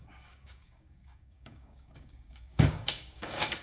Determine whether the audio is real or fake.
fake